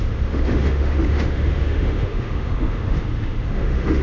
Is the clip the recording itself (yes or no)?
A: no